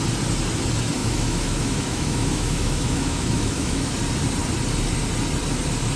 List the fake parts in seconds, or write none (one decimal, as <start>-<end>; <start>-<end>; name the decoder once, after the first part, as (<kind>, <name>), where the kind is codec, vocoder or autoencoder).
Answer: 1.0-3.9 (autoencoder, DAC-VAE)